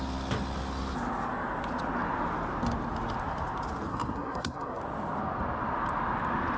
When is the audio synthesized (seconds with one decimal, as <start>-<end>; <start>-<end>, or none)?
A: 3.9-4.8